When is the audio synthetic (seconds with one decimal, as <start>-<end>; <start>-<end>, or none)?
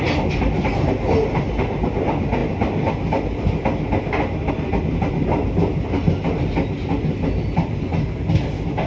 none